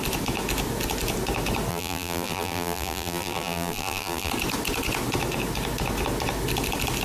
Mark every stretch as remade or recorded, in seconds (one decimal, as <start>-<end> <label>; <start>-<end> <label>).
0.0-1.7 recorded; 1.7-4.3 remade; 4.3-7.0 recorded